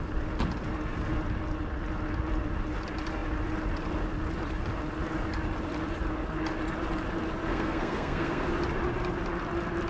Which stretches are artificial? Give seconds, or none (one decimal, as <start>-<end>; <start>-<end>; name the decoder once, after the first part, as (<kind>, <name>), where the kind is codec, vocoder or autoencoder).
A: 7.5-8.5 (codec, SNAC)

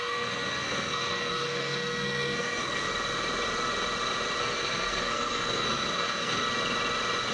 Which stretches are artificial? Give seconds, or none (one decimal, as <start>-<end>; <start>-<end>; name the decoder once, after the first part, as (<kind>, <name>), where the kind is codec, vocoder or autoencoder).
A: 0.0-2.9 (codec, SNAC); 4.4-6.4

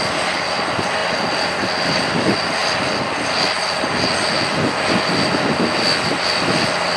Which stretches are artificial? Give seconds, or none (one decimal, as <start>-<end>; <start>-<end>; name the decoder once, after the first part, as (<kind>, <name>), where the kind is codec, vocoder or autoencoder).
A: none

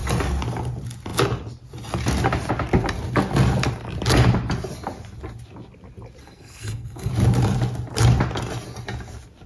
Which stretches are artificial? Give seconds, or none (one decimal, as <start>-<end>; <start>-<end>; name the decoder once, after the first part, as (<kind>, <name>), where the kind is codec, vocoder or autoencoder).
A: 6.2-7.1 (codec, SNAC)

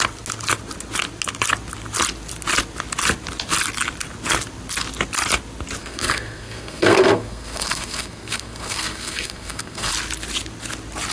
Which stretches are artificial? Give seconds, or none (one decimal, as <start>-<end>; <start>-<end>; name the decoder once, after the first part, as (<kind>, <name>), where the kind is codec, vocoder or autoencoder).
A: 5.8-9.9 (codec, SNAC)

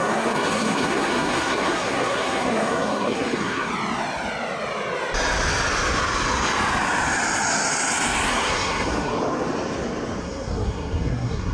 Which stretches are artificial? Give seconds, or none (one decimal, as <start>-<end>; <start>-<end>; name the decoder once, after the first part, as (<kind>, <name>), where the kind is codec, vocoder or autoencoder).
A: 0.0-3.7 (codec, SNAC); 8.3-9.1; 10.2-11.5

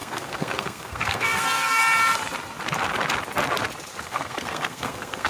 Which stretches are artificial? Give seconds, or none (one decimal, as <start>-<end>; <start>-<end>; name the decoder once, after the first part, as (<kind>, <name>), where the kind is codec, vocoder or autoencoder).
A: 0.0-1.8 (codec, SNAC); 4.0-5.3

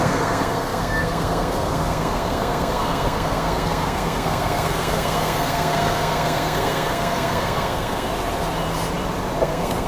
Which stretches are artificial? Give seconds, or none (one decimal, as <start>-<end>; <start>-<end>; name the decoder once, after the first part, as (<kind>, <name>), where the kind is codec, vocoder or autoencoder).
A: 0.0-8.1 (codec, SNAC); 9.4-9.9